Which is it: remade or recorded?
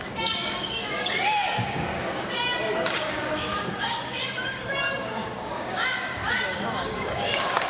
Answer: remade